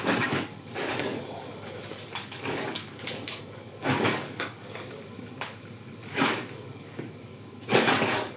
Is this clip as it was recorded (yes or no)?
no